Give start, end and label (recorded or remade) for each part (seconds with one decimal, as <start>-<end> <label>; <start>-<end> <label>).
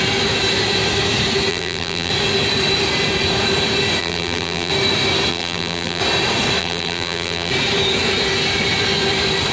0.0-1.5 recorded; 1.5-2.1 remade; 2.1-4.0 recorded; 4.0-4.7 remade; 4.7-5.3 recorded; 5.3-6.0 remade; 6.0-6.6 recorded; 6.6-7.5 remade; 7.5-9.5 recorded